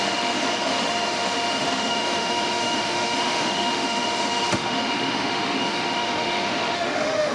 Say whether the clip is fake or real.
fake